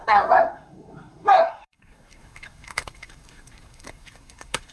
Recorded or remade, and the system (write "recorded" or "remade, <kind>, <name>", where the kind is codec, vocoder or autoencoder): remade, codec, SNAC